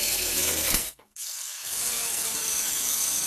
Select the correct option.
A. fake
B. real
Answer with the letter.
A